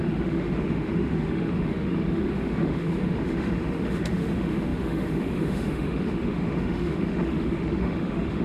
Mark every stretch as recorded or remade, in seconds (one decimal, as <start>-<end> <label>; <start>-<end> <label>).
0.0-8.4 remade